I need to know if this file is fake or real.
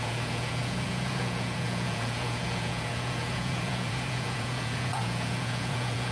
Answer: fake